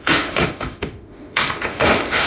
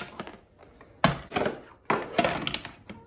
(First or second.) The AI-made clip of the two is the first